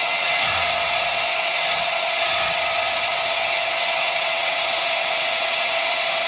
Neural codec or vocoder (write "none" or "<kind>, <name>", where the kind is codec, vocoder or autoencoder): vocoder, WaveNeXt